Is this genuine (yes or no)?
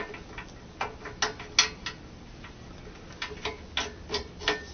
yes